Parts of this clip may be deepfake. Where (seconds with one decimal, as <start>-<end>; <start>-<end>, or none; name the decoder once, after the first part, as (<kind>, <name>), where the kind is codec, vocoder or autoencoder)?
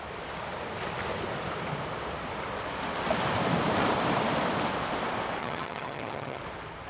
5.4-6.4 (vocoder, HiFi-GAN)